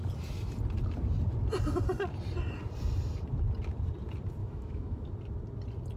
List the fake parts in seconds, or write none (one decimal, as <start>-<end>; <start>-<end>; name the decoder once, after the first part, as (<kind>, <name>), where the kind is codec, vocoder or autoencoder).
4.4-5.1 (autoencoder, DAC-VAE)